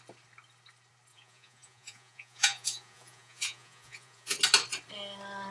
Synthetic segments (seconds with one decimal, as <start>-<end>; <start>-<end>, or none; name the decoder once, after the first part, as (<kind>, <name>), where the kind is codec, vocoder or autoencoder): 1.1-4.4 (vocoder, Vocos)